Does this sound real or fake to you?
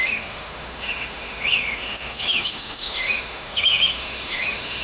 fake